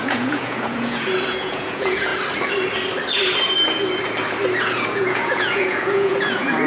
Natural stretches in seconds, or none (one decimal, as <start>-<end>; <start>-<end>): 2.1-4.6